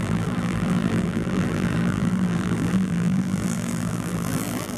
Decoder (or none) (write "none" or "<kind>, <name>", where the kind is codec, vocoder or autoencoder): vocoder, BigVGAN v2